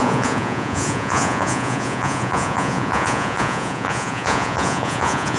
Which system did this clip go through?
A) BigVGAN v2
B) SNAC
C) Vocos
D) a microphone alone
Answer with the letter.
C